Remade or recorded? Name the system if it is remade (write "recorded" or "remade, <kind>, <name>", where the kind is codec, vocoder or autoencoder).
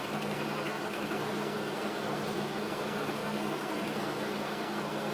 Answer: remade, codec, SNAC